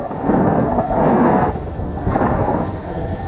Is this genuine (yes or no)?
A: no